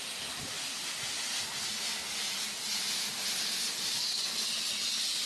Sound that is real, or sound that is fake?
real